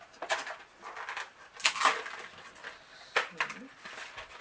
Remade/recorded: recorded